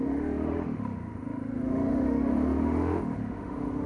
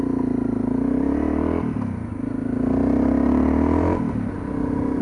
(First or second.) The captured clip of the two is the second